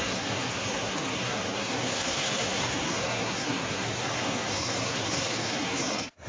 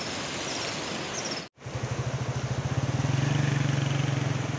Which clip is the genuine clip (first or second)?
second